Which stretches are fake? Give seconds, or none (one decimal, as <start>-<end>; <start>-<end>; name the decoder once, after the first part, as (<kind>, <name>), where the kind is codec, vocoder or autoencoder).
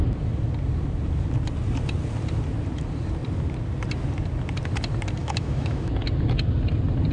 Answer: 5.2-5.9 (autoencoder, DAC-VAE)